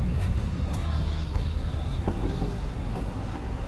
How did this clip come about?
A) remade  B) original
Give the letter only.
A